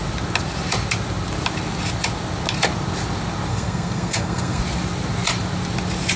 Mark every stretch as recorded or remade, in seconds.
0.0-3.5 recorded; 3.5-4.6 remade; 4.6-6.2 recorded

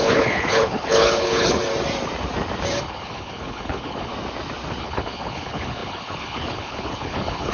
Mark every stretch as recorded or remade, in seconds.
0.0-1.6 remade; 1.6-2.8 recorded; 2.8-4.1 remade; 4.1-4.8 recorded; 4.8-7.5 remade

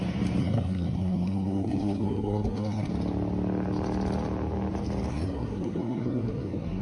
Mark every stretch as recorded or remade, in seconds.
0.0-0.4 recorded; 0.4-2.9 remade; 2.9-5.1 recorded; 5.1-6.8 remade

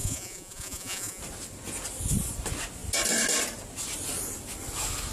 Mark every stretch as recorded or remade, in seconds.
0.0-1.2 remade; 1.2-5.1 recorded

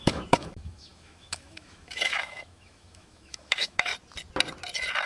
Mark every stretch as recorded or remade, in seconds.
0.0-3.9 remade; 3.9-5.1 recorded

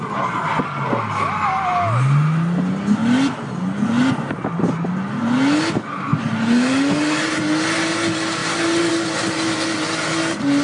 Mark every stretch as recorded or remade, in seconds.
0.0-10.6 recorded

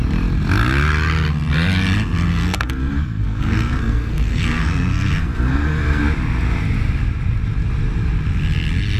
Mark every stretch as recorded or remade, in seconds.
0.0-2.3 recorded; 2.3-6.0 remade; 6.0-9.0 recorded